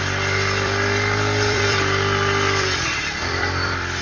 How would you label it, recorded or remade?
remade